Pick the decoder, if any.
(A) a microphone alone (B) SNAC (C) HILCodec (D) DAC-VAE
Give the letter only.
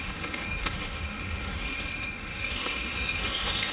D